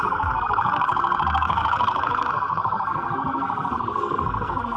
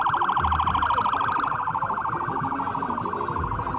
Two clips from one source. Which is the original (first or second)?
second